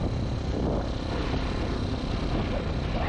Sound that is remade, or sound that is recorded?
recorded